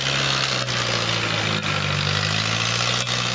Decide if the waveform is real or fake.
real